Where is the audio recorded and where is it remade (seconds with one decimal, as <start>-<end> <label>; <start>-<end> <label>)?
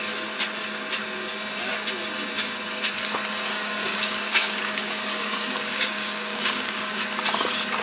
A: 0.0-3.5 recorded; 3.5-7.0 remade; 7.0-7.8 recorded